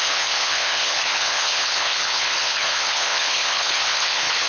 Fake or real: fake